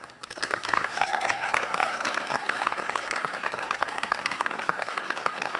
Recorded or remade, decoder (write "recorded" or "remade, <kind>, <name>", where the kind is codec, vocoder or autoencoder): remade, codec, SNAC